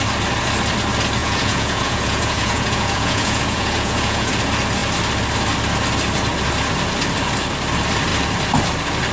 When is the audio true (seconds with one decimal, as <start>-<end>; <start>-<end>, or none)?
0.0-1.2; 4.3-9.1